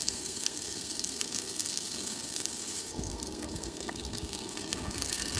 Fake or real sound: fake